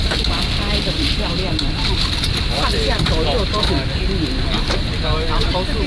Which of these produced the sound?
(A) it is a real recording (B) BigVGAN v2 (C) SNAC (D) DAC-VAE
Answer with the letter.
A